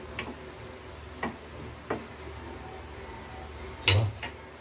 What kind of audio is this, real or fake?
real